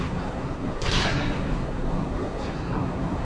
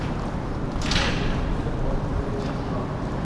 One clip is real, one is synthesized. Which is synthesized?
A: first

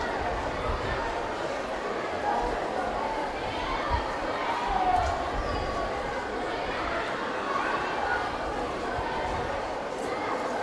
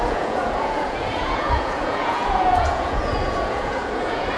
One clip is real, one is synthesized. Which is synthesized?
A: second